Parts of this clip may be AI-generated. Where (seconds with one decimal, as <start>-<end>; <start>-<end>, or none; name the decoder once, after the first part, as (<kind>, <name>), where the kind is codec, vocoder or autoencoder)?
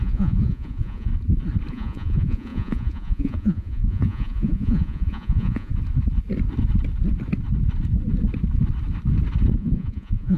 0.0-1.1 (vocoder, Vocos); 1.7-5.7; 9.6-10.4